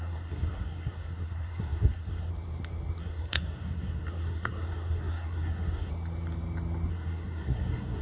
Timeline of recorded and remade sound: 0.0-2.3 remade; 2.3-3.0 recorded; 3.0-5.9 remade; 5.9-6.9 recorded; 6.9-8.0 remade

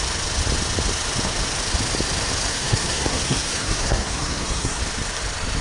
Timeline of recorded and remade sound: 0.0-2.5 recorded; 2.5-4.8 remade; 4.8-5.6 recorded

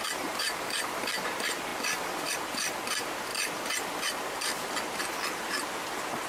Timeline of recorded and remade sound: 0.0-6.3 recorded

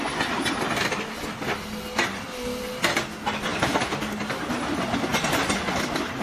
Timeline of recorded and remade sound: 0.0-6.2 recorded

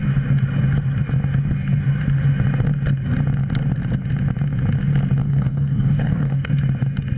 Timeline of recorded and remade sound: 0.0-5.2 recorded; 5.2-6.5 remade; 6.5-7.2 recorded

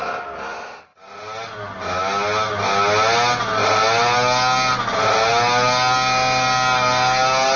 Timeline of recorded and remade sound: 0.0-7.6 recorded

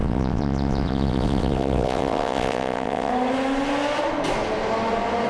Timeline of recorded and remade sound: 0.0-3.1 remade; 3.1-5.3 recorded